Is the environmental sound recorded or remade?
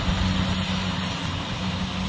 recorded